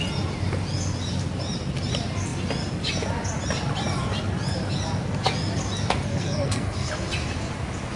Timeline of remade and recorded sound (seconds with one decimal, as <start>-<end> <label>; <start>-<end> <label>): 0.0-6.1 recorded; 6.1-6.9 remade; 6.9-8.0 recorded